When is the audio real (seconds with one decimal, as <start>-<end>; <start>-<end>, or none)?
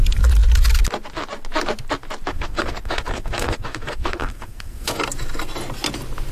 0.0-2.3; 5.0-6.3